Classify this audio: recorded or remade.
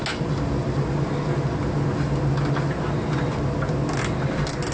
recorded